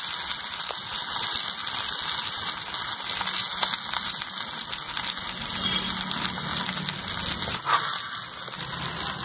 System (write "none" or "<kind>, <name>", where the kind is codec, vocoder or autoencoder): none